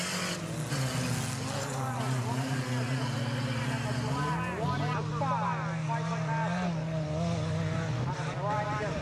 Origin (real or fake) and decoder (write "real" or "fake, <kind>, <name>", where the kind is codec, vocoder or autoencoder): real